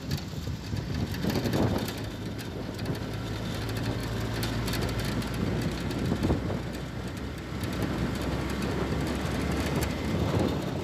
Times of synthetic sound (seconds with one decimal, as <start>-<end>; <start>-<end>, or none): 0.0-4.0; 8.0-10.8

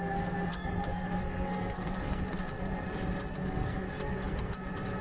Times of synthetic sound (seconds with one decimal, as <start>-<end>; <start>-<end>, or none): 0.5-2.5; 3.3-4.6

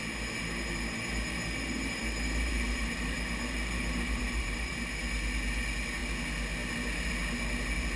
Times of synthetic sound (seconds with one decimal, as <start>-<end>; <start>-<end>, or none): 0.4-4.7

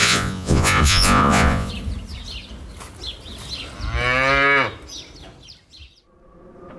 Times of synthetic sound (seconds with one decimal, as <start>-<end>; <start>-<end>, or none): 0.0-1.7

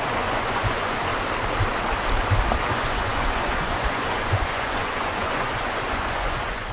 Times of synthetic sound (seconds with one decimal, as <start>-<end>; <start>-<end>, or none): 0.0-1.1; 2.7-6.7